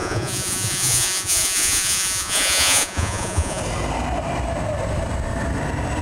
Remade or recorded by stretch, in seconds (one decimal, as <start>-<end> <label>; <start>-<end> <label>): 0.0-3.6 remade; 3.6-6.0 recorded

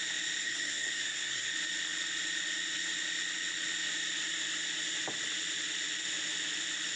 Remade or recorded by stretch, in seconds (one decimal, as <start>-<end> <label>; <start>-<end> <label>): 0.0-0.4 recorded; 0.4-1.5 remade; 1.5-7.0 recorded

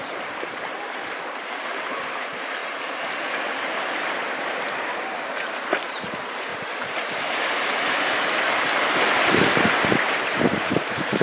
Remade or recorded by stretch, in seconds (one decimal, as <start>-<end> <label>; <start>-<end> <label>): 0.0-2.6 remade; 2.6-5.8 recorded; 5.8-6.5 remade; 6.5-9.1 recorded; 9.1-11.2 remade

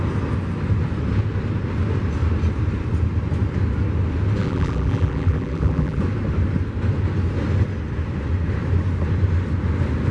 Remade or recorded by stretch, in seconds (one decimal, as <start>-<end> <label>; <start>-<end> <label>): 0.0-4.4 recorded; 4.4-6.0 remade; 6.0-10.1 recorded

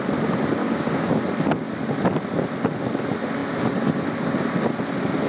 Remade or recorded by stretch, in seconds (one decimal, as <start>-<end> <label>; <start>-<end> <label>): 0.0-0.6 recorded; 0.6-1.2 remade; 1.2-5.3 recorded